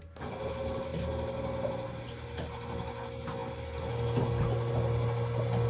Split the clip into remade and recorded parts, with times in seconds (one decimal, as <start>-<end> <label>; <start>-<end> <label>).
0.0-5.7 recorded